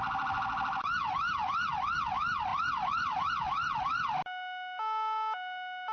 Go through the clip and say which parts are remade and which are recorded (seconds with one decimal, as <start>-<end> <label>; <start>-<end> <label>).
0.0-2.5 recorded; 2.5-3.3 remade; 3.3-5.9 recorded